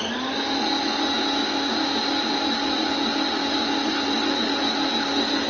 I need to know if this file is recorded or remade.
recorded